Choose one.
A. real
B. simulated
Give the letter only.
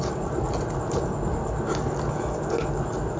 A